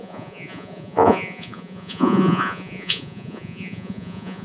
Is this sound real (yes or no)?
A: no